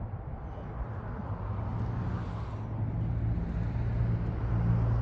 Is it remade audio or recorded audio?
recorded